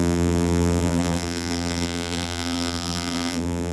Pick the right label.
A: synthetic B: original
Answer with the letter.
A